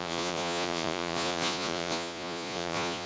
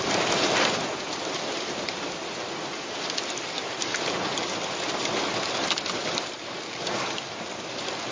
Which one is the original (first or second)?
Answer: second